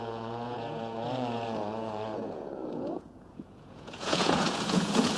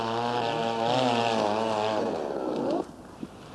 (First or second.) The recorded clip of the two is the second